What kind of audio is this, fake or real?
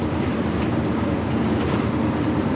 fake